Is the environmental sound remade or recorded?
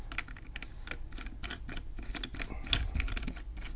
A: recorded